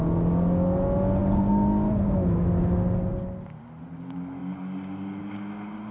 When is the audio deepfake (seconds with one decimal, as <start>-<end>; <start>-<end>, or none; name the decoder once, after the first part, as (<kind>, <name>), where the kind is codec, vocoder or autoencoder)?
none